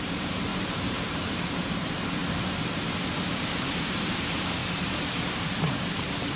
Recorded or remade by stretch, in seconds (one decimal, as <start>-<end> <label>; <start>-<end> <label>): 0.0-2.2 remade; 2.2-3.2 recorded; 3.2-6.4 remade